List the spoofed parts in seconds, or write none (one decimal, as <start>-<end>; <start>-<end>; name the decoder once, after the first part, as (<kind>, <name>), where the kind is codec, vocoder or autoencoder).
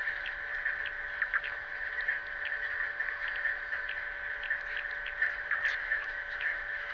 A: 0.0-0.5 (autoencoder, DAC-VAE); 1.2-1.7; 5.8-6.9